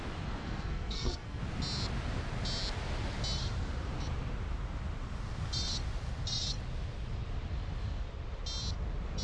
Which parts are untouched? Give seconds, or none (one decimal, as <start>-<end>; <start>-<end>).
0.0-0.4; 1.4-9.2